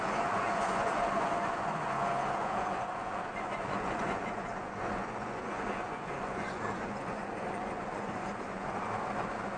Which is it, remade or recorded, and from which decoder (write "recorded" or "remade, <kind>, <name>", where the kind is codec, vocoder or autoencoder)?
remade, vocoder, Vocos